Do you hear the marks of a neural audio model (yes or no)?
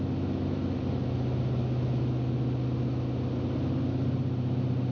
no